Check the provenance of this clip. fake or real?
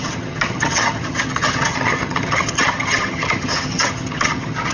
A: fake